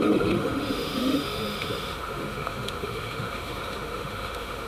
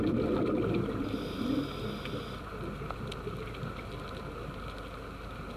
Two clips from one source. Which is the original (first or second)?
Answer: second